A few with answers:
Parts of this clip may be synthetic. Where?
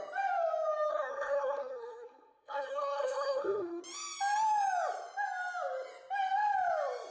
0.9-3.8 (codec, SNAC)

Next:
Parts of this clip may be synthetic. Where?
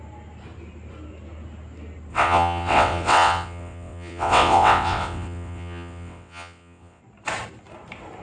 2.1-7.0 (vocoder, WaveNeXt)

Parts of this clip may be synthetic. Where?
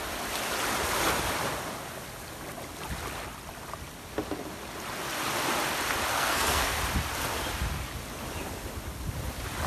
6.1-6.8 (codec, SNAC)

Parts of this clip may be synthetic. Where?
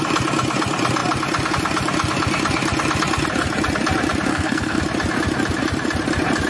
4.3-4.8 (codec, SNAC)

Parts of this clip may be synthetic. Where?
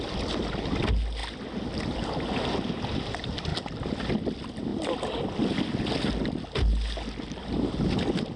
none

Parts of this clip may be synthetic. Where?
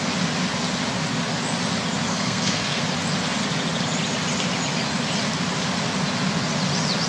2.1-2.8 (codec, SNAC)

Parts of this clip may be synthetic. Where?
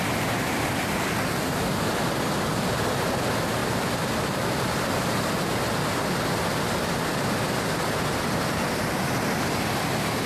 3.6-4.6 (vocoder, BigVGAN v2)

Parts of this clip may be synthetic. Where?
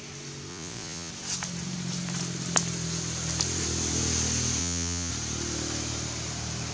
0.5-1.1 (vocoder, Vocos); 4.6-5.1